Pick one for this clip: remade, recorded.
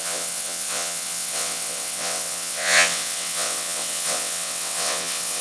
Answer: remade